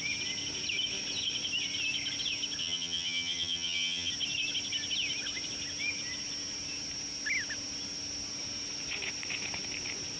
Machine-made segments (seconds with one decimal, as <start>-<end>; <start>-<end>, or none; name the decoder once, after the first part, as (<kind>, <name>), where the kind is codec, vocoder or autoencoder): 2.6-4.1 (vocoder, HiFi-GAN)